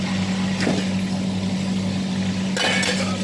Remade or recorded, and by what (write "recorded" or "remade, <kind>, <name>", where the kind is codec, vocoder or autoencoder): recorded